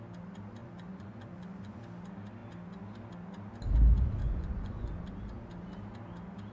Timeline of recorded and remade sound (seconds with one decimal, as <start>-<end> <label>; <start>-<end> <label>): 0.0-0.6 recorded; 0.6-1.8 remade; 1.8-4.2 recorded; 4.2-5.0 remade; 5.0-6.5 recorded